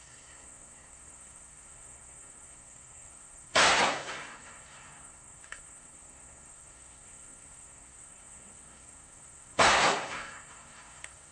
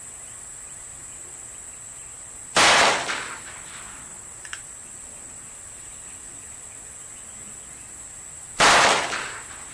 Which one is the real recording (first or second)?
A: second